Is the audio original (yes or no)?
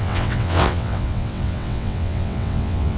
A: no